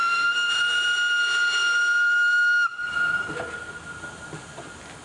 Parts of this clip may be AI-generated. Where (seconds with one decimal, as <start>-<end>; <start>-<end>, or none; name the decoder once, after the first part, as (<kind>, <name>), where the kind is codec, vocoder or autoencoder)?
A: 0.0-0.5 (autoencoder, DAC-VAE)